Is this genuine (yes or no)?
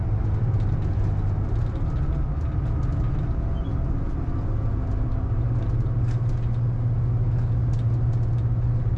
yes